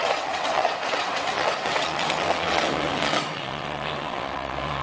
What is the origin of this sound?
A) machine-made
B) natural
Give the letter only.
A